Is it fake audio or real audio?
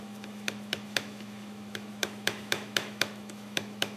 fake